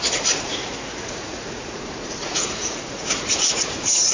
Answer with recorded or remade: remade